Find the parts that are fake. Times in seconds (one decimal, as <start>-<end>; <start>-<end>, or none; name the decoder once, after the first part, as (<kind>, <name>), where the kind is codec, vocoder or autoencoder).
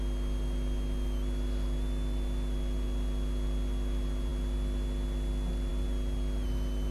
none